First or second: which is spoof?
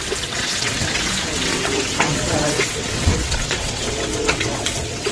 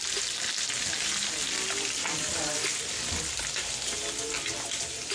first